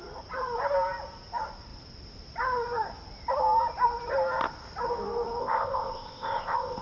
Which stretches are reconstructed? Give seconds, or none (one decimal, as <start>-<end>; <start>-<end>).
5.4-6.8